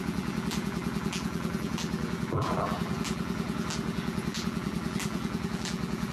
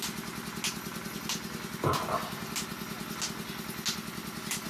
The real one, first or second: second